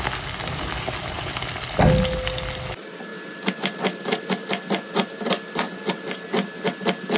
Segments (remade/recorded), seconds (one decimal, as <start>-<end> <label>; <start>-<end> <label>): 0.0-7.2 recorded

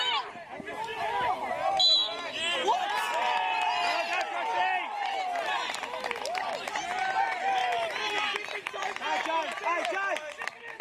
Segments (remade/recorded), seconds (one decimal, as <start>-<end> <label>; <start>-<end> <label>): 0.0-10.8 recorded

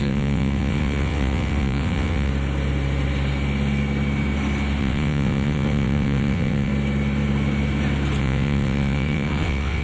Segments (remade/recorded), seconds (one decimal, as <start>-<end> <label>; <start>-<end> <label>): 0.0-2.3 remade; 2.3-4.8 recorded; 4.8-6.7 remade; 6.7-8.2 recorded; 8.2-9.8 remade

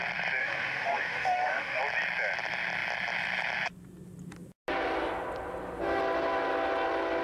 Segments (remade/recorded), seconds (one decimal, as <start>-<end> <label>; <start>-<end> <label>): 0.0-0.4 recorded; 0.4-1.8 remade; 1.8-7.2 recorded

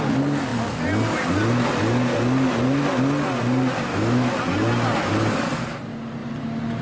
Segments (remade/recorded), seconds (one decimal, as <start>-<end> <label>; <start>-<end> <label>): 0.0-3.9 recorded; 3.9-4.4 remade; 4.4-6.8 recorded